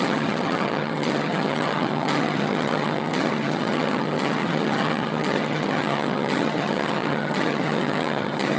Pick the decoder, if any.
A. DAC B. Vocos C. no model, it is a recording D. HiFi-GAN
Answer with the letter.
D